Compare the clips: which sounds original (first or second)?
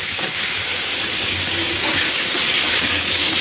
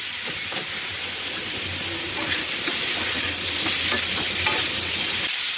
second